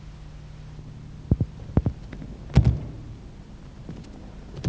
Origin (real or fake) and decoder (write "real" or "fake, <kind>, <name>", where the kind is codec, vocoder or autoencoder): real